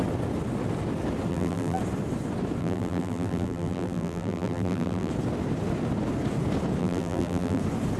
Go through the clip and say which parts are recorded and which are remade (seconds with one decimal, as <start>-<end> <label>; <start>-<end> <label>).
0.0-1.3 recorded; 1.3-1.8 remade; 1.8-2.6 recorded; 2.6-5.1 remade; 5.1-6.8 recorded; 6.8-7.6 remade; 7.6-8.0 recorded